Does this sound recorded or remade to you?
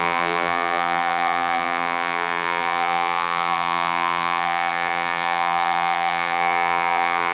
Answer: remade